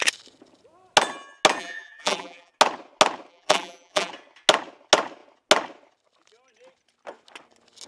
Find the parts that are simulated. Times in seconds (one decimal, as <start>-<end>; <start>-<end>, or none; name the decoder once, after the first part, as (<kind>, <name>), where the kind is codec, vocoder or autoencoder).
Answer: 1.6-2.5 (vocoder, BigVGAN v2); 3.3-4.1